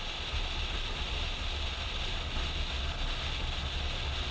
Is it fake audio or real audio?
real